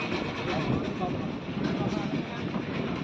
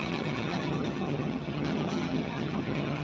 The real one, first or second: first